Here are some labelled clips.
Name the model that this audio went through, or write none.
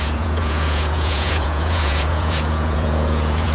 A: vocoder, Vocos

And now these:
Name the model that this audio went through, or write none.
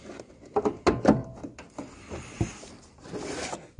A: none